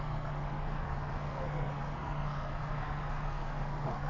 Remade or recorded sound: remade